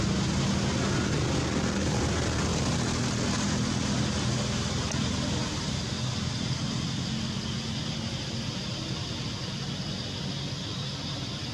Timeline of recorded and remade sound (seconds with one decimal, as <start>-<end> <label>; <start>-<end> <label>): 0.0-11.5 recorded